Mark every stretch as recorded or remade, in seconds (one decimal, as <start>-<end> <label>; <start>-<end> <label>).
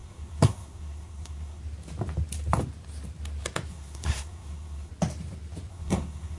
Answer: 0.0-1.6 remade; 1.6-3.7 recorded; 3.7-4.9 remade; 4.9-5.7 recorded; 5.7-6.4 remade